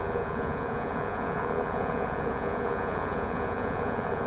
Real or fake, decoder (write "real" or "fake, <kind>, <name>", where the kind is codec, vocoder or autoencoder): fake, vocoder, Vocos